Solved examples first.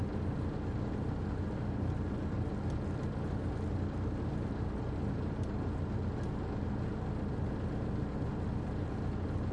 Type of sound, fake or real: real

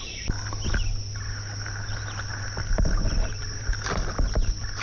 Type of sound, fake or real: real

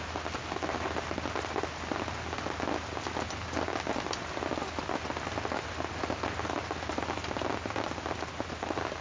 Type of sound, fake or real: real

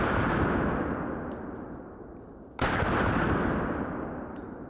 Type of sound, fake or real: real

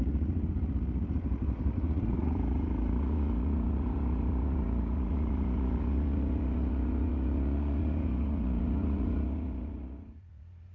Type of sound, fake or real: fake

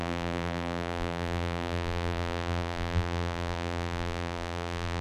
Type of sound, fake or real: fake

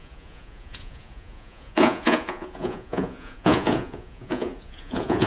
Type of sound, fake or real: fake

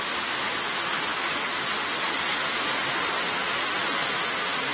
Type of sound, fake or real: real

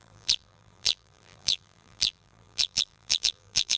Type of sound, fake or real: fake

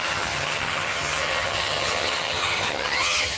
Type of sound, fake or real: fake